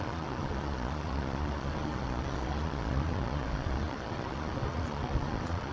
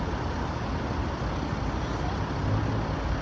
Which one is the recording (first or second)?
second